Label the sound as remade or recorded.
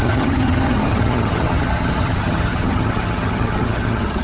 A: remade